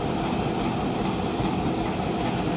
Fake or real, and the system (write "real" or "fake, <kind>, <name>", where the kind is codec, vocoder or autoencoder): real